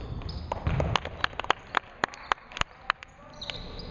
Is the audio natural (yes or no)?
yes